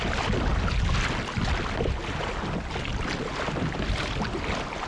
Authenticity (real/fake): real